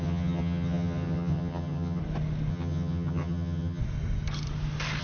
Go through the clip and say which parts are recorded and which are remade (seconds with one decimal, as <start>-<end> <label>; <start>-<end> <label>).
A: 0.0-2.0 remade; 2.0-2.5 recorded; 2.5-3.8 remade; 3.8-5.0 recorded